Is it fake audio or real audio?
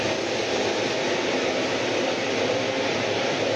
real